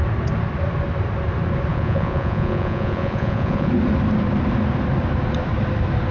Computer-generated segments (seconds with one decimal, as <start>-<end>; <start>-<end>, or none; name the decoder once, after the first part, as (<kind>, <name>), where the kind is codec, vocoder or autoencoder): 1.7-3.7 (vocoder, Vocos)